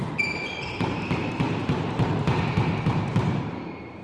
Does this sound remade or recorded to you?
remade